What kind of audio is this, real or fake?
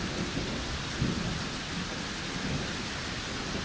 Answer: real